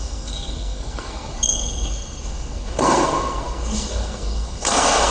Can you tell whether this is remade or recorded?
remade